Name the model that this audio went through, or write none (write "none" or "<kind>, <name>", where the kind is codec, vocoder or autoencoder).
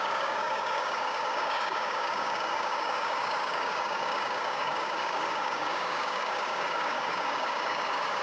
codec, DAC